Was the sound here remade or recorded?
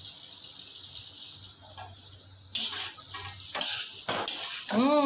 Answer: recorded